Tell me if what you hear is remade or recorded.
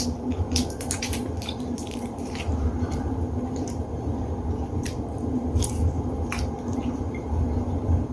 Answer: remade